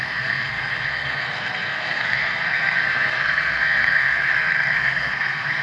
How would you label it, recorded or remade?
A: remade